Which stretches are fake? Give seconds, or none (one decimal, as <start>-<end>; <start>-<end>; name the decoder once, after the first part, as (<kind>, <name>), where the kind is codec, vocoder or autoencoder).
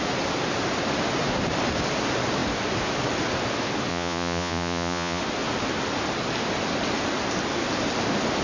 3.9-5.2 (vocoder, Vocos)